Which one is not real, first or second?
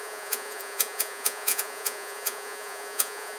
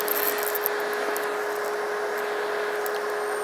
first